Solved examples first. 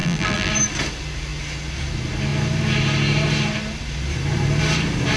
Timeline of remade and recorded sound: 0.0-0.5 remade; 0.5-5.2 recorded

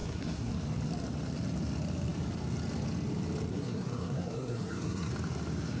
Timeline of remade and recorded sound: 0.0-0.5 remade; 0.5-3.5 recorded; 3.5-5.1 remade; 5.1-5.8 recorded

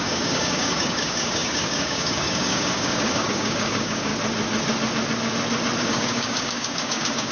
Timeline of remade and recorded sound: 0.0-4.1 remade; 4.1-5.8 recorded; 5.8-7.3 remade

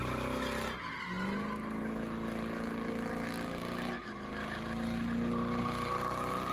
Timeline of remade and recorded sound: 0.0-6.5 recorded

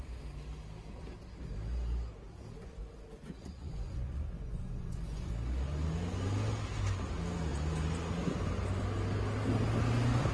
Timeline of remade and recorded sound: 0.0-2.6 recorded; 2.6-5.3 remade; 5.3-10.3 recorded

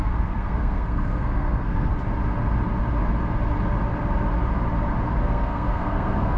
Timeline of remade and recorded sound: 0.0-1.9 remade; 1.9-5.2 recorded; 5.2-6.4 remade

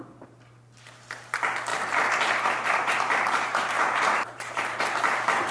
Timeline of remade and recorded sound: 0.0-1.7 recorded; 1.7-4.8 remade; 4.8-5.5 recorded

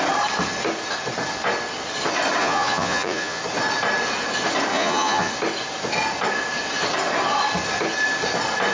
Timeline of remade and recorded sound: 0.0-2.4 recorded; 2.4-3.4 remade; 3.4-4.7 recorded; 4.7-5.3 remade; 5.3-8.7 recorded